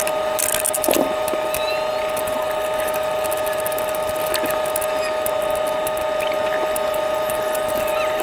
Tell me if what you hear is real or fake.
real